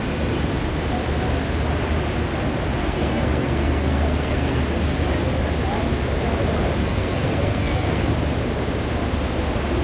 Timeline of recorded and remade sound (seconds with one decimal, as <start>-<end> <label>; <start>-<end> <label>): 0.0-2.8 recorded; 2.8-4.6 remade; 4.6-6.8 recorded; 6.8-8.1 remade; 8.1-9.8 recorded